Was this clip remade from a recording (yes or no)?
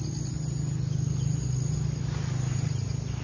no